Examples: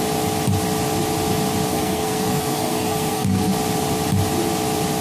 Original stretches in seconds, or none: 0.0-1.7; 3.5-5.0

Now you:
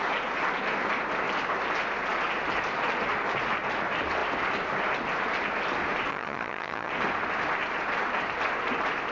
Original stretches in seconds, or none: 0.0-6.1; 6.9-9.1